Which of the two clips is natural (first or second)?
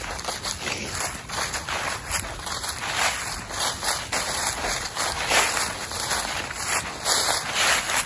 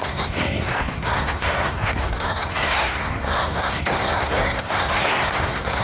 first